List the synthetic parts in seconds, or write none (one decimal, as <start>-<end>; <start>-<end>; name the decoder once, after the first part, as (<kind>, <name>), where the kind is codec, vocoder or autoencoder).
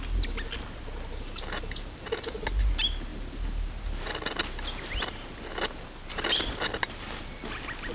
none